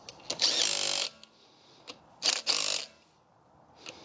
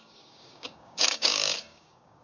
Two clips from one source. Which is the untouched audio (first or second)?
first